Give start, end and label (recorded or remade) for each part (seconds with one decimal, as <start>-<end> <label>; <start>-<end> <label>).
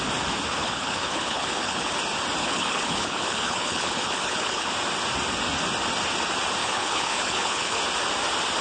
0.0-0.6 recorded; 0.6-1.9 remade; 1.9-2.4 recorded; 2.4-4.7 remade; 4.7-6.6 recorded; 6.6-7.8 remade; 7.8-8.6 recorded